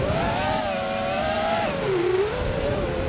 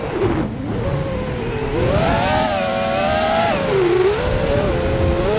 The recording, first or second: second